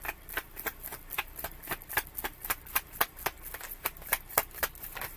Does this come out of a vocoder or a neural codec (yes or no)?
no